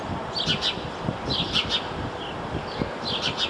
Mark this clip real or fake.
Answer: real